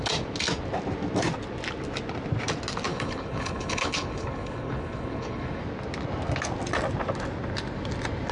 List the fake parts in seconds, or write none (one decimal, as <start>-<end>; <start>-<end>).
2.9-5.6